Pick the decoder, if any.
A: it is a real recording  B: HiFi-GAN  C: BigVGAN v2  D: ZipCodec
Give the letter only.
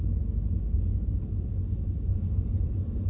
A